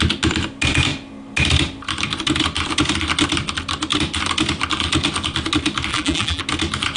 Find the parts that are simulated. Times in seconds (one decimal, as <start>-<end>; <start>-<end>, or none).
5.9-6.4